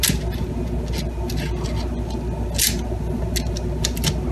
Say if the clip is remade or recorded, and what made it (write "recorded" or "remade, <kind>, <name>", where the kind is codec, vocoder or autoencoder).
recorded